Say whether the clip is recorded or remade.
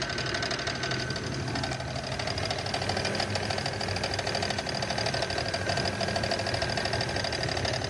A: recorded